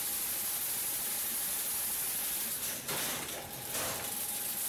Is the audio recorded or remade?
recorded